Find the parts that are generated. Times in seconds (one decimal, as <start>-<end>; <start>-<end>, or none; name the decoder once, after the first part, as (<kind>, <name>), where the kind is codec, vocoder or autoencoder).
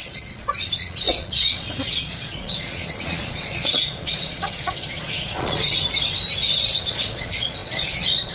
0.0-5.7 (vocoder, Vocos); 6.6-8.3